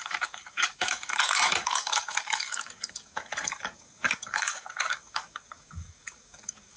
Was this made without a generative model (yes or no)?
no